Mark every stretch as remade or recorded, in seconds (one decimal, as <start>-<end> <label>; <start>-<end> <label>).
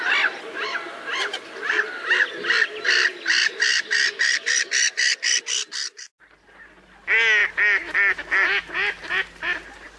0.0-10.0 recorded